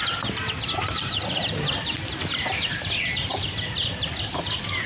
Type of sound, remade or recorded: recorded